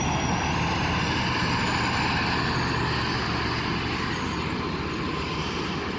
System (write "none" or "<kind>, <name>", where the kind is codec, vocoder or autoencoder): none